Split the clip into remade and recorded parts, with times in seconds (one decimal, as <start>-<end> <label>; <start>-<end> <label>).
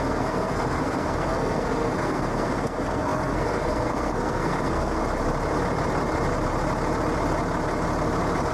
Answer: 0.0-5.0 remade; 5.0-8.5 recorded